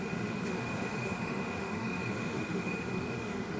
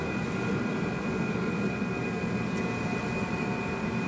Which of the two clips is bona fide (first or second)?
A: second